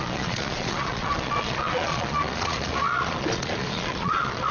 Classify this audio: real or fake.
fake